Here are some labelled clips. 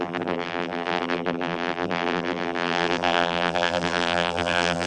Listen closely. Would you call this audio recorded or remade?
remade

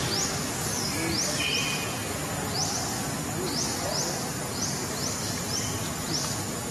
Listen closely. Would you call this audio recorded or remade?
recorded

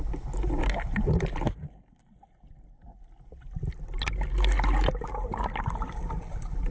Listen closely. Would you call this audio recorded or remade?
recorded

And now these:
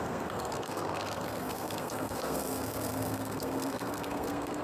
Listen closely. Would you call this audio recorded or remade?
remade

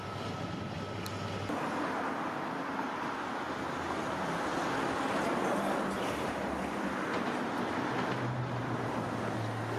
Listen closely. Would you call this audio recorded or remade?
recorded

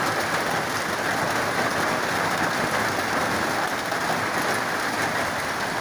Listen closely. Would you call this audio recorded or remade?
recorded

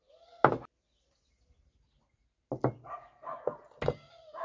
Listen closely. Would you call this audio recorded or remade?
recorded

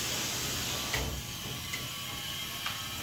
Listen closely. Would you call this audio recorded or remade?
recorded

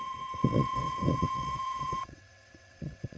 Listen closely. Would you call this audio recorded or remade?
remade